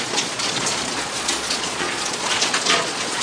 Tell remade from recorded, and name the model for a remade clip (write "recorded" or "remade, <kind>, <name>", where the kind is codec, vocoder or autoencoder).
remade, vocoder, Vocos